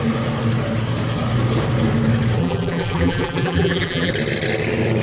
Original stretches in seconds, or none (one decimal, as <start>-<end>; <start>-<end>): 0.0-2.4; 4.1-5.0